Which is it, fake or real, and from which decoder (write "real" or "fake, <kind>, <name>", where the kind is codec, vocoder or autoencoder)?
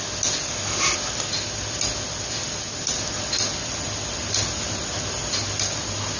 real